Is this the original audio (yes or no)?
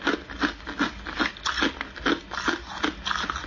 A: yes